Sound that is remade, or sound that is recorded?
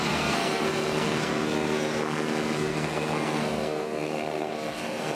remade